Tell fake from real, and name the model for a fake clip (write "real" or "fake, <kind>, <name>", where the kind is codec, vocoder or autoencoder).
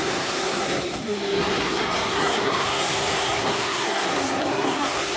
fake, codec, SNAC